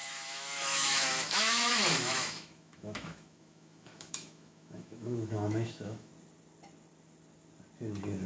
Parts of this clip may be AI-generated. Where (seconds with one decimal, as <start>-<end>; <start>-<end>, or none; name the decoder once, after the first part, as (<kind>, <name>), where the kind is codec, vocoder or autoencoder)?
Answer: 0.0-6.1 (autoencoder, DAC-VAE)